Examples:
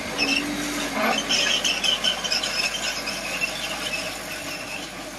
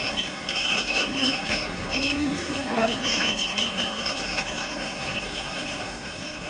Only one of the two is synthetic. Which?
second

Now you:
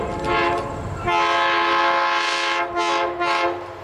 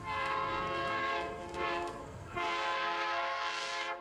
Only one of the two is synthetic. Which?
second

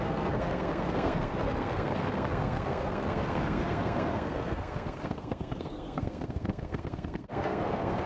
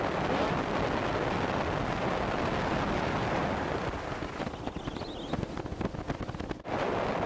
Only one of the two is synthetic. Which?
first